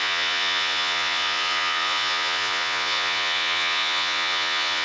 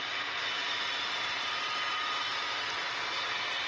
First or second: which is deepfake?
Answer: first